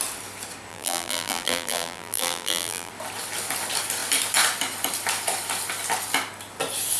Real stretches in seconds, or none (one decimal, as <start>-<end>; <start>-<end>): 0.0-0.7; 2.9-7.0